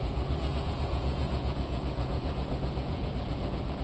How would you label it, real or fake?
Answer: fake